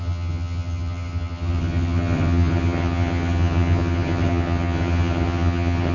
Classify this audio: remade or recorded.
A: remade